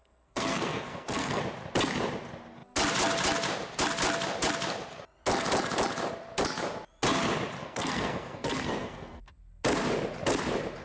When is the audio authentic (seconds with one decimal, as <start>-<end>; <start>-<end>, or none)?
1.4-7.6; 9.2-10.8